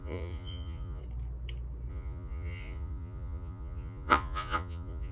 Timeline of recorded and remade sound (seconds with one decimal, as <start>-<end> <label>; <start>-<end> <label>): 0.0-1.0 remade; 1.0-1.9 recorded; 1.9-5.1 remade